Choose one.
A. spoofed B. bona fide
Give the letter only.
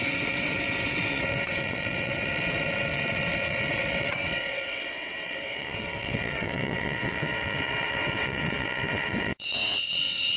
A